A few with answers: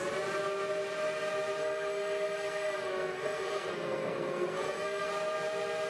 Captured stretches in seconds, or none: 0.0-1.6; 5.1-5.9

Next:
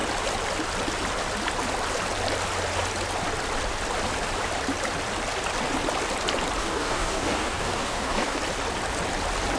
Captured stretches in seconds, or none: 0.0-6.6; 8.4-9.6

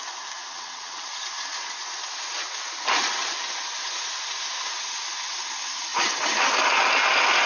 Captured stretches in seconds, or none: 0.0-0.5; 1.0-7.5

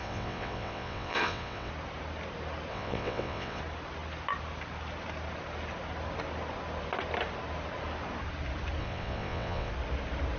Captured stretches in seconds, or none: 1.7-2.7; 3.6-8.8; 9.7-10.4

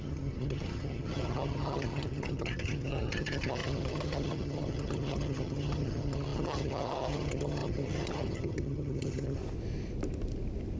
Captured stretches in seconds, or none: 9.4-10.8

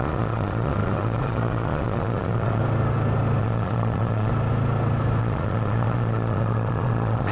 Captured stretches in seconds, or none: 2.6-3.4; 4.3-5.2